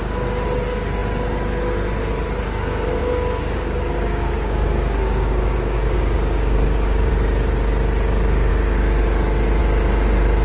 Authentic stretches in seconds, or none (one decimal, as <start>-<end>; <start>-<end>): 0.0-3.0; 7.1-10.4

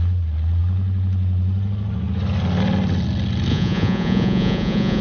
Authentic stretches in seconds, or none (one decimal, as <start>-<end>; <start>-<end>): 0.0-3.5

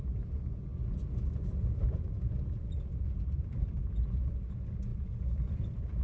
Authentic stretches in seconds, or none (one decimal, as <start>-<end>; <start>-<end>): 0.0-0.7; 4.3-4.9

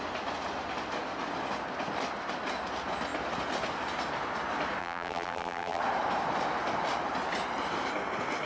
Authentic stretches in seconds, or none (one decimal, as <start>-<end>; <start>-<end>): 0.0-4.8; 5.8-8.5

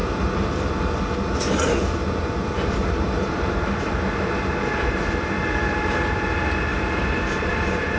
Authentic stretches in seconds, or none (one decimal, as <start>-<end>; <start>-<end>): none